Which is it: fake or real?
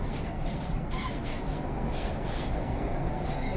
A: fake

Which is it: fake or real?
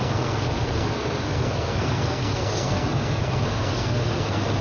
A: fake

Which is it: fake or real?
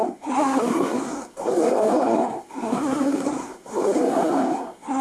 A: fake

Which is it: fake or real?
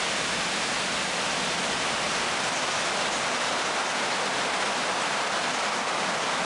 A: real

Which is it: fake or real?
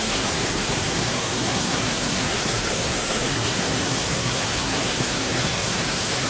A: fake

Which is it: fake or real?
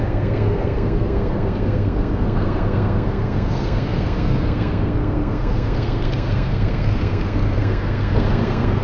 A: fake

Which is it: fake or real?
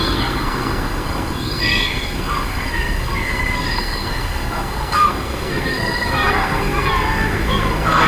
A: fake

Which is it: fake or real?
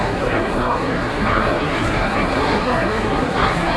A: fake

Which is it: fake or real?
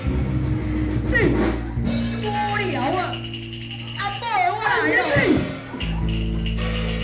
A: real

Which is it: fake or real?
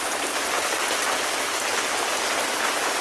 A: real